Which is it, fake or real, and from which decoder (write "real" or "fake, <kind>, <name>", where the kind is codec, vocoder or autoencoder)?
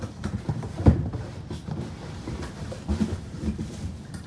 fake, vocoder, BigVGAN v2